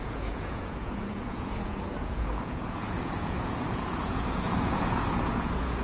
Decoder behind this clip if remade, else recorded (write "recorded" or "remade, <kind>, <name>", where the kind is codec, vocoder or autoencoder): remade, vocoder, Vocos